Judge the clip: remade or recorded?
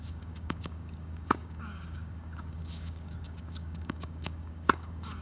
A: remade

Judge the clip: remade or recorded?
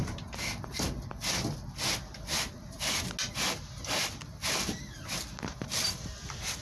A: recorded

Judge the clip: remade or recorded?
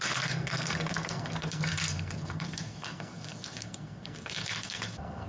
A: remade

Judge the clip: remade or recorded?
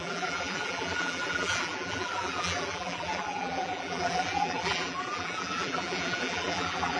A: remade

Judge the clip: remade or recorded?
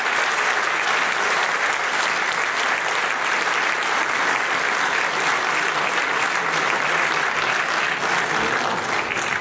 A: recorded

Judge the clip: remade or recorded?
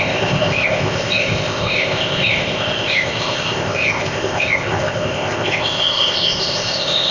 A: remade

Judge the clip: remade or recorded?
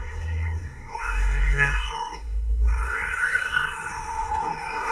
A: remade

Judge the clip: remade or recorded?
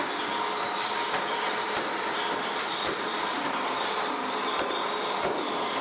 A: remade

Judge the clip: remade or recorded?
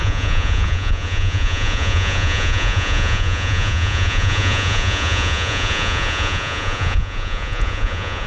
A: remade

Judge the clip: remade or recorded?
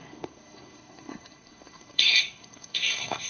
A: remade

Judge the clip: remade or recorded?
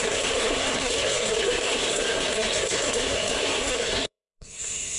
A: remade